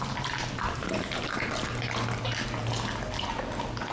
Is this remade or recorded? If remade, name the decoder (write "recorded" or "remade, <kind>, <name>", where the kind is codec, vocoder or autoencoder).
recorded